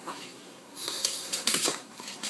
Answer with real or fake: fake